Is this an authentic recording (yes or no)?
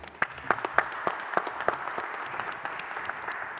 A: yes